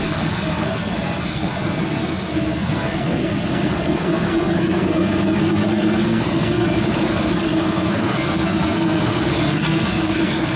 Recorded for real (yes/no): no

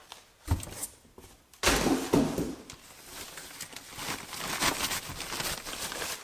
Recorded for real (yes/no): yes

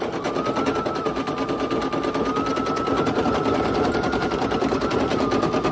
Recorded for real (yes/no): yes